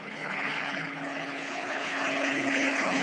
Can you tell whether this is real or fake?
fake